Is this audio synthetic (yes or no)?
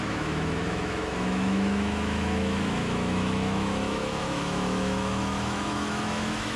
yes